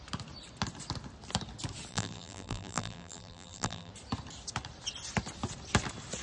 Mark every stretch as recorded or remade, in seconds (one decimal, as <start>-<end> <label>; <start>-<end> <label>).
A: 0.0-1.9 recorded; 1.9-3.9 remade; 3.9-6.2 recorded